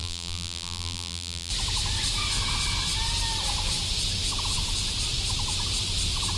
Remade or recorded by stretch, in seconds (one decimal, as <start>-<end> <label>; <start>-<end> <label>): 0.0-1.5 remade; 1.5-6.4 recorded